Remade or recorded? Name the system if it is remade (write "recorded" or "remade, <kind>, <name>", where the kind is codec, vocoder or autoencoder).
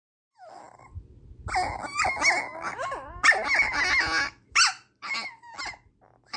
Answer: recorded